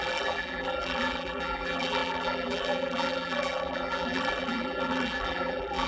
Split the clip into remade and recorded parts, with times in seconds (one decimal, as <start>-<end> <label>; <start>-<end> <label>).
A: 0.0-5.9 remade

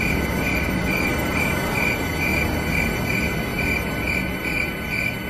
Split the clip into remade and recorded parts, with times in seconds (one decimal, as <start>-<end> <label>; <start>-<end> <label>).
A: 0.0-0.5 recorded; 0.5-1.4 remade; 1.4-5.3 recorded